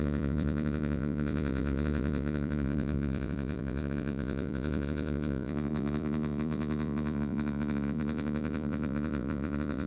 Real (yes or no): no